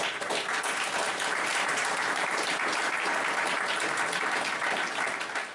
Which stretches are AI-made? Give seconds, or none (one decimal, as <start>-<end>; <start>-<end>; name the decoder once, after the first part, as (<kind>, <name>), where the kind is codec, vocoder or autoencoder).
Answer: 1.5-3.2 (vocoder, BigVGAN v2)